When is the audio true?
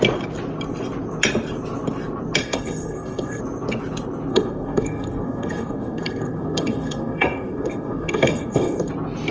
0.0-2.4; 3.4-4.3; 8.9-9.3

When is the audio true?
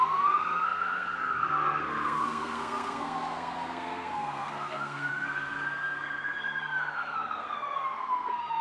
none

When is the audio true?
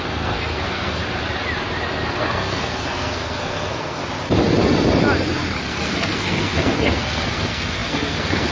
1.0-2.1; 4.0-5.6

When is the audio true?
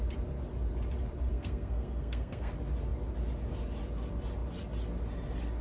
0.0-1.3; 2.5-5.6